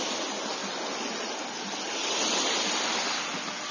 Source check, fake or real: real